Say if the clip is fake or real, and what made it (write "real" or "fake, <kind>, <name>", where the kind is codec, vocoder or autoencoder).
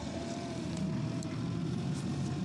fake, vocoder, BigVGAN v2